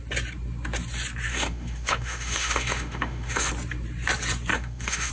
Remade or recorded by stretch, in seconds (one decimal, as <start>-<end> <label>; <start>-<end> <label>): 0.0-1.3 recorded; 1.3-3.5 remade; 3.5-4.5 recorded; 4.5-5.1 remade